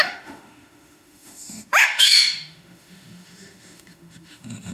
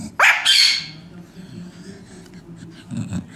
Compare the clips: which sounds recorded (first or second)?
second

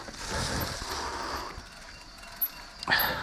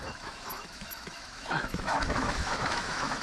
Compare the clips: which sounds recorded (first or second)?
first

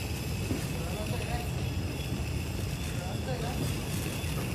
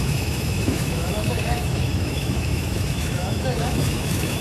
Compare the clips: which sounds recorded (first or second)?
first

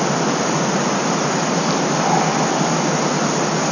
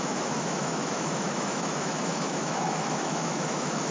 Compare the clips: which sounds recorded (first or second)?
first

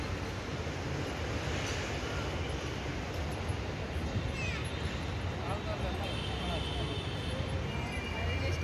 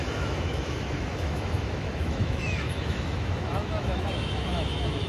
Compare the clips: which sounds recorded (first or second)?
first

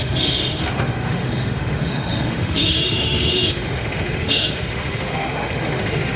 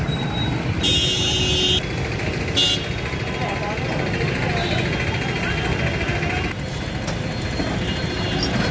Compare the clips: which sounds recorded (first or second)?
second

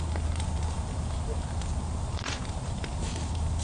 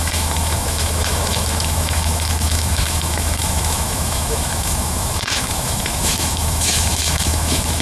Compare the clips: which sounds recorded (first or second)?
first